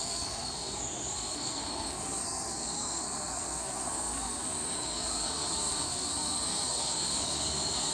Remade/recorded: remade